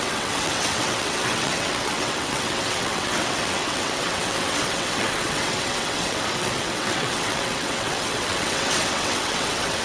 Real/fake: fake